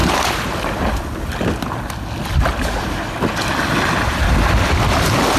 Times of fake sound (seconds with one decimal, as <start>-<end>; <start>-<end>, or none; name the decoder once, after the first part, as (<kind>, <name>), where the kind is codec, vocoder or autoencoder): none